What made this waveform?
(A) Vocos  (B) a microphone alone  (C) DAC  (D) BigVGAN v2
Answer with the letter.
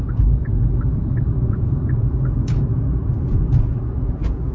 A